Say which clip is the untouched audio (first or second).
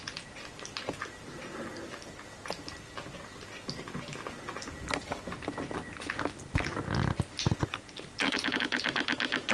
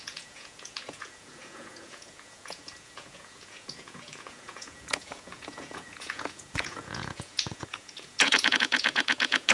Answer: first